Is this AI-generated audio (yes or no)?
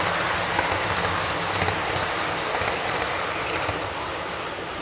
no